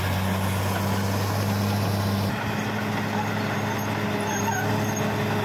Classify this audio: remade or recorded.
recorded